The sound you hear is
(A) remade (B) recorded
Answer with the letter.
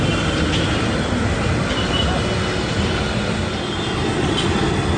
B